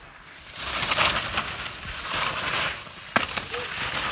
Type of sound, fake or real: real